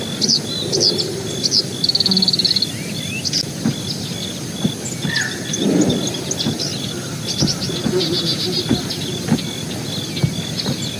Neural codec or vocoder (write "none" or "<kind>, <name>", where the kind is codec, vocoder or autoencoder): none